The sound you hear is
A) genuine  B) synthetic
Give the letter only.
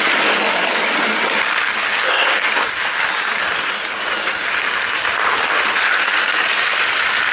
A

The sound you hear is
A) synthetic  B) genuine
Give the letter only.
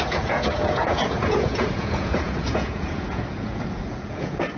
A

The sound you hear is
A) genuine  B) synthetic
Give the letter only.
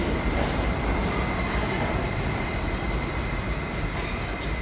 A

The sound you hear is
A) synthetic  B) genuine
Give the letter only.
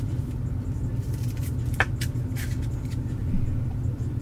B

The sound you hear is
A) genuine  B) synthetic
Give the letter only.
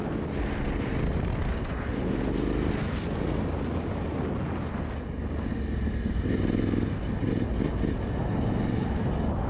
A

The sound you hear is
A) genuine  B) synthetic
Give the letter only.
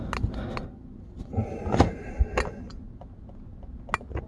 A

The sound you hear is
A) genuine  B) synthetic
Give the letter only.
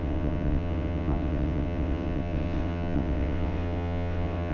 B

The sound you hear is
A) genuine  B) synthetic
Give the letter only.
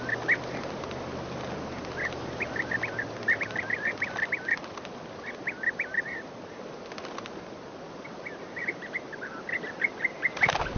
A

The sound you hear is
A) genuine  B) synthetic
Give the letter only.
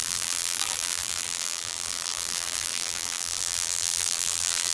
B